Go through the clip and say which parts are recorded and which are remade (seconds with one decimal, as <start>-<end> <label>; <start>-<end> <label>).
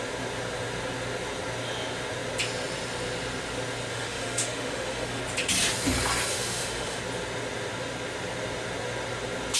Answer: 0.0-3.9 recorded; 3.9-5.2 remade; 5.2-6.3 recorded; 6.3-7.0 remade; 7.0-9.6 recorded